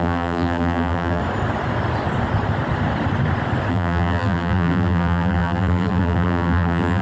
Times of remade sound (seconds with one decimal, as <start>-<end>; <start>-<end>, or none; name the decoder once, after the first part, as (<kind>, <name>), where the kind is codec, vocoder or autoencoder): 0.0-1.2 (vocoder, BigVGAN v2); 3.7-7.0